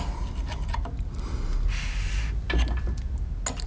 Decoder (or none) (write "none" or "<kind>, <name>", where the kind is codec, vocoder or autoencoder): none